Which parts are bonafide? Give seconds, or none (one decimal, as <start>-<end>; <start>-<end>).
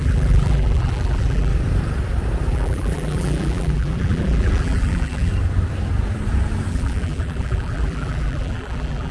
1.5-2.5; 5.3-6.7